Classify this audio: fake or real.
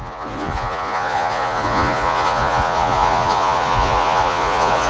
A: fake